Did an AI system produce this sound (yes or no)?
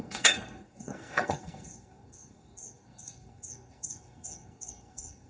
yes